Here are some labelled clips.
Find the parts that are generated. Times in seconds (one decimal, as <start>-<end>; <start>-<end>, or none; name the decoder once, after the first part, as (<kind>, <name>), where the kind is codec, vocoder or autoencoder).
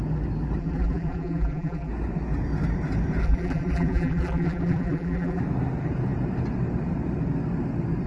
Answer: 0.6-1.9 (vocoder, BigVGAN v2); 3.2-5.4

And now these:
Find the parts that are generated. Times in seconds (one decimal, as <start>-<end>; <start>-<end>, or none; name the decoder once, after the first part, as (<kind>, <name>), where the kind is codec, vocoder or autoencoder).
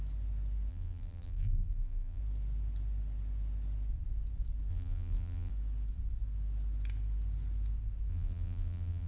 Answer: 0.7-2.2 (vocoder, BigVGAN v2); 4.7-5.5; 8.1-9.1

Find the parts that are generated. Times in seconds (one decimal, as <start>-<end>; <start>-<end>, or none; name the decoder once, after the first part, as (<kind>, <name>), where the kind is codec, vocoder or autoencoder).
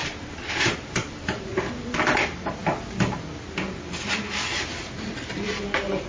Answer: 0.0-1.6 (vocoder, BigVGAN v2)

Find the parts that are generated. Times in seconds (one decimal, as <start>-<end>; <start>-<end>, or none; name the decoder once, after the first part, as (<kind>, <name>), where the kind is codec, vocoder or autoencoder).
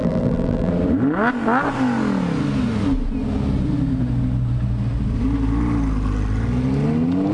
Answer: 0.0-0.7 (vocoder, BigVGAN v2)